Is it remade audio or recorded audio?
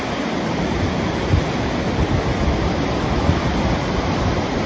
remade